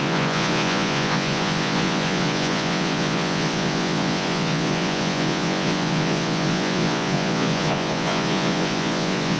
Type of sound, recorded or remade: remade